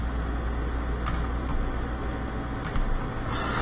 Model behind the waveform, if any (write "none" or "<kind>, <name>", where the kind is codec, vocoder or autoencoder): none